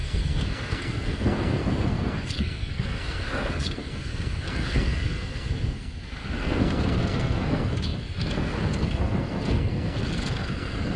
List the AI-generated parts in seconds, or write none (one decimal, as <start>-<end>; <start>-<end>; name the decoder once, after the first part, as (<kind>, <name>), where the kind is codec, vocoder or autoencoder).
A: 0.0-11.0 (codec, SNAC)